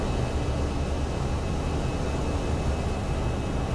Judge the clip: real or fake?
real